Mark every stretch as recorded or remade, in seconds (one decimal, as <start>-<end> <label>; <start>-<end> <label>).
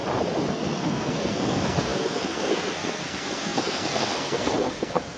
0.0-0.5 recorded; 0.5-5.2 remade